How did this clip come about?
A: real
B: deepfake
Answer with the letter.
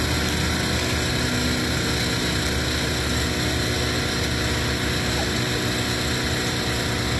A